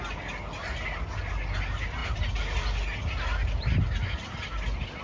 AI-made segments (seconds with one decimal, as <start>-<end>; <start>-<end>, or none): none

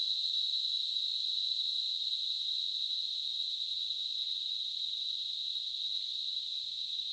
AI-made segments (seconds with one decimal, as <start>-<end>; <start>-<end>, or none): 6.5-7.1

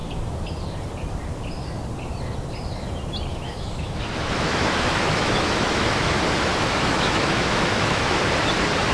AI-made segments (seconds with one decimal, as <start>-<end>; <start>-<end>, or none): 3.3-6.1; 6.5-8.2

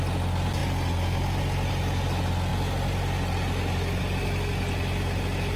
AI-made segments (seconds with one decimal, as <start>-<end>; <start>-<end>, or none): none